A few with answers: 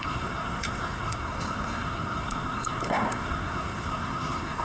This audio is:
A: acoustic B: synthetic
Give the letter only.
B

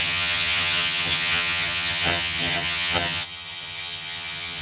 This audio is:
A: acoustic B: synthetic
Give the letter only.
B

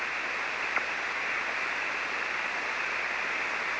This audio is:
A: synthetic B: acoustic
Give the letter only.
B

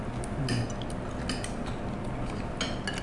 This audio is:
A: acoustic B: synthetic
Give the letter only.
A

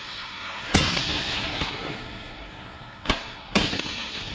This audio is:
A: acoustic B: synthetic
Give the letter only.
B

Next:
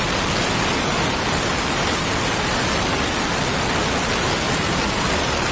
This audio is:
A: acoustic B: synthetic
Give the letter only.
A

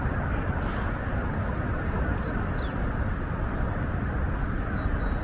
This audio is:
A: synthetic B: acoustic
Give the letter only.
A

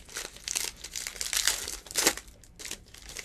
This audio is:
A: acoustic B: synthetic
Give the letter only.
A